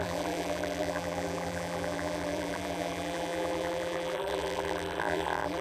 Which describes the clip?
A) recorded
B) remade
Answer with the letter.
B